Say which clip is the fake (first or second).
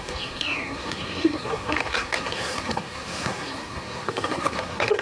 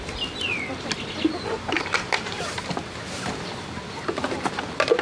first